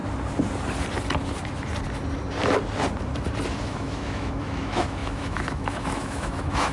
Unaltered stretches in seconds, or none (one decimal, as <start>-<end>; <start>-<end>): 0.0-3.6